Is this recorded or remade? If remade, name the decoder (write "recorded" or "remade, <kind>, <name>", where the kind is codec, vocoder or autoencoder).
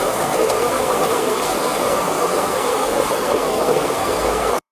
remade, codec, SNAC